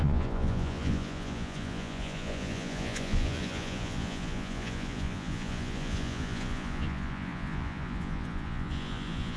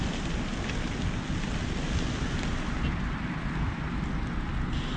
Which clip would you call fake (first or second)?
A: first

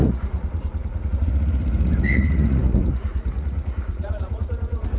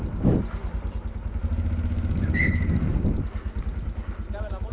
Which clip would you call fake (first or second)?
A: first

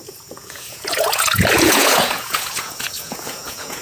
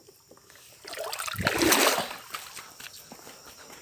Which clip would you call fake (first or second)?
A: first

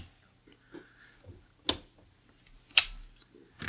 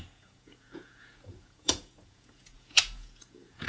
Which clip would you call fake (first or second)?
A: second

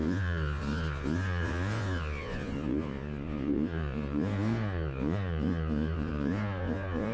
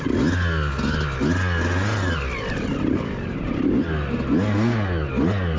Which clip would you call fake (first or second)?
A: first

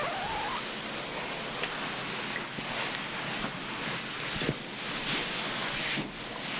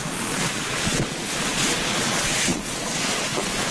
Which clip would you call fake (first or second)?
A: second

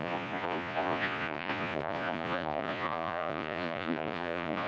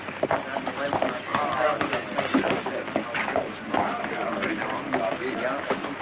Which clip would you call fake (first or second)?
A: first